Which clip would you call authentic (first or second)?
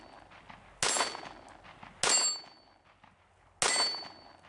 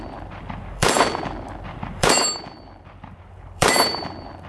first